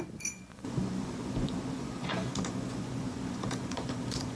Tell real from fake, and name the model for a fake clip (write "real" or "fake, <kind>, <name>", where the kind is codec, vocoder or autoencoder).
fake, vocoder, Vocos